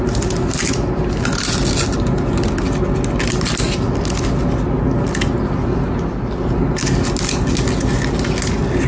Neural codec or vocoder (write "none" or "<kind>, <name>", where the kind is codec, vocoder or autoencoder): none